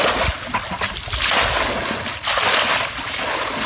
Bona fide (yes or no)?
yes